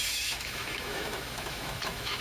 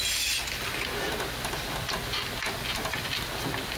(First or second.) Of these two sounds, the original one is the second